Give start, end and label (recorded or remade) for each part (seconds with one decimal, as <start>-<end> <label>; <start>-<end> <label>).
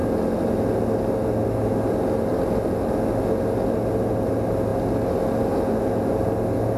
0.0-6.8 recorded